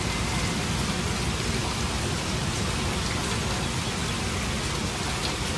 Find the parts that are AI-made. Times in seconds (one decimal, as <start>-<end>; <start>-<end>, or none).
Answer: none